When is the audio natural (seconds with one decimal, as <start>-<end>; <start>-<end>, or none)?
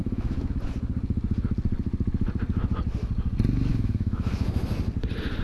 0.5-3.7; 4.6-5.4